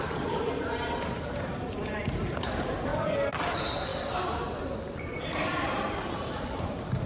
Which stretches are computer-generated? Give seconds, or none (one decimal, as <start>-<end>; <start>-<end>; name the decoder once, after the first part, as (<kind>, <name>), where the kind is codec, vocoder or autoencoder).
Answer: 0.0-2.9 (vocoder, BigVGAN v2); 3.5-7.1